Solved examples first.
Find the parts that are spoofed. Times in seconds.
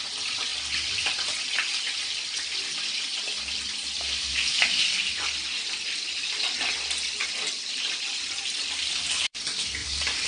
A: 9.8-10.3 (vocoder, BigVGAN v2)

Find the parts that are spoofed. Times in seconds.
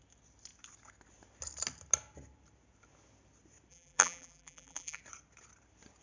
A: 3.7-5.0 (vocoder, BigVGAN v2)